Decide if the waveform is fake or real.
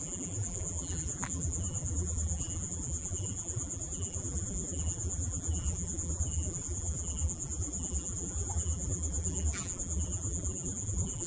fake